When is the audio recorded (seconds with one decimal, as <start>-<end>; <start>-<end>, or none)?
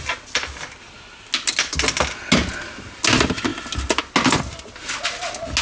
0.0-5.6